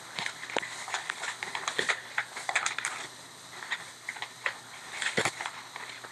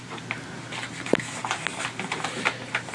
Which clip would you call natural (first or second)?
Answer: second